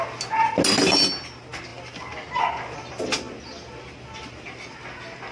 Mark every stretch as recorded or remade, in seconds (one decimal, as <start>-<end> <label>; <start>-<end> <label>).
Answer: 0.0-5.3 recorded